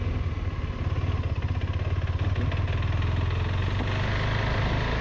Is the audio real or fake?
real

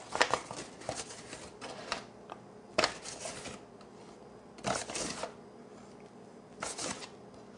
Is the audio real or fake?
real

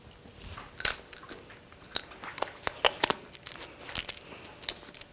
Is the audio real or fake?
real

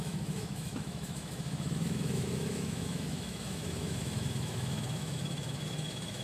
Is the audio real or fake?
fake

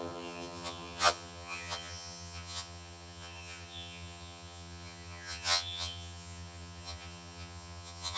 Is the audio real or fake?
fake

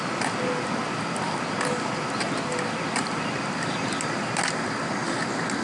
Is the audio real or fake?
real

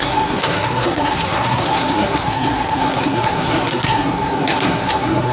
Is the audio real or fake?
fake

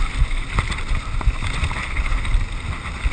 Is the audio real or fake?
real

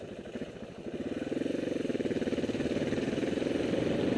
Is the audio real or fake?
real